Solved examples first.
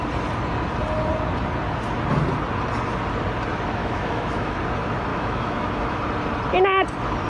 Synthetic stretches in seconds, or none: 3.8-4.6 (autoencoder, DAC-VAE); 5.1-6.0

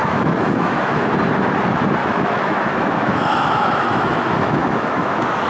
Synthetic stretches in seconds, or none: 0.0-1.1 (autoencoder, DAC-VAE); 2.0-5.5

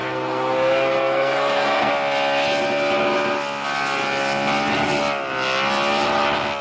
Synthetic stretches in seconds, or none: 0.0-1.9 (codec, SNAC)

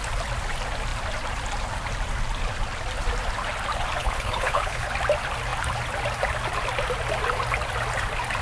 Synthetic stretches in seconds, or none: 4.0-4.9 (codec, HILCodec)

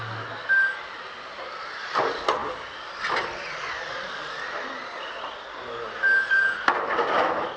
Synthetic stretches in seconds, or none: none